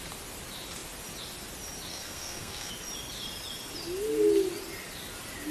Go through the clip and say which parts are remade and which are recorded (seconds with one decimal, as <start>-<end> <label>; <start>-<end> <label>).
0.0-1.9 recorded; 1.9-2.7 remade; 2.7-5.5 recorded